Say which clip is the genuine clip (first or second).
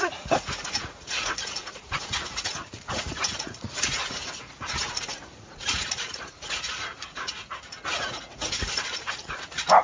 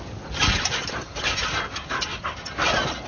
second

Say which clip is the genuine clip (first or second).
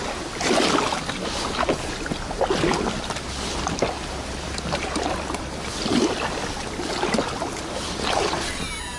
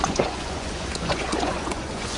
first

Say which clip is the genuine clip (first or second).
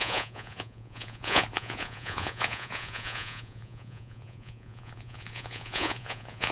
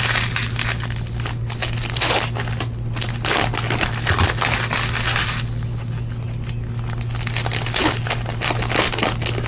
second